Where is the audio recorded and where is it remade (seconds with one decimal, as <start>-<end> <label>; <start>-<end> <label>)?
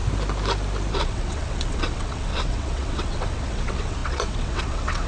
0.0-0.9 recorded; 0.9-5.1 remade